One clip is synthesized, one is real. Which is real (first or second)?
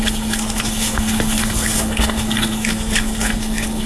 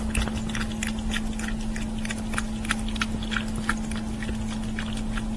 second